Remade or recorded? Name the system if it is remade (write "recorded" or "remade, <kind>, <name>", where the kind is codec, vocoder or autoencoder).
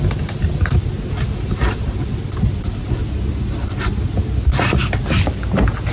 recorded